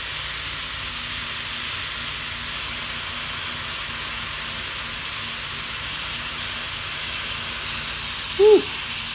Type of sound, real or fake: real